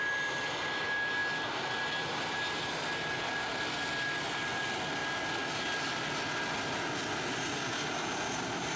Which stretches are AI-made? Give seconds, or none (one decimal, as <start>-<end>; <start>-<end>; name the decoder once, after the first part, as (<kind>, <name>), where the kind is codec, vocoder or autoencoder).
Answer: none